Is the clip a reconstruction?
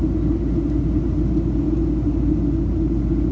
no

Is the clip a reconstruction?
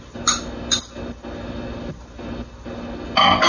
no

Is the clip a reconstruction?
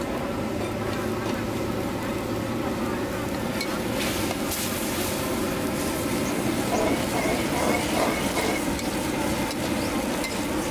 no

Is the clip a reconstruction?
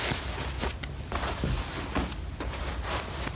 no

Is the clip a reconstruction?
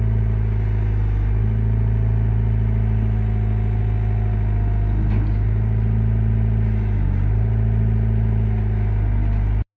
no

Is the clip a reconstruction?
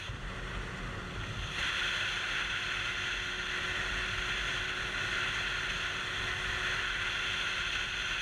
no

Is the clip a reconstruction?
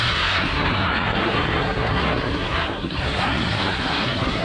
yes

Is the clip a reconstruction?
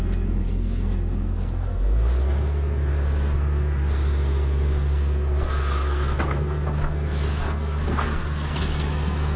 yes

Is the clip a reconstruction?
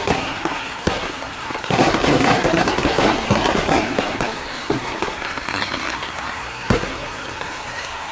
yes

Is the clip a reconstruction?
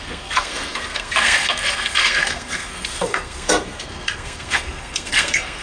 yes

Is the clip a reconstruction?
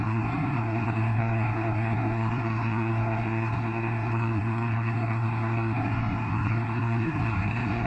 yes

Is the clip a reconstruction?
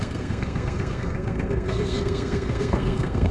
yes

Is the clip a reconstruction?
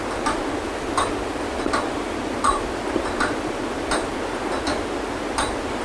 no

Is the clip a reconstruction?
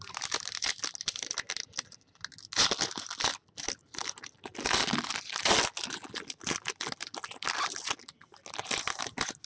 no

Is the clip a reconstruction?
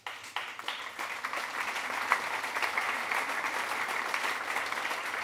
no